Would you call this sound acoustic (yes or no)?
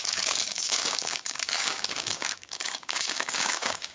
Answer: no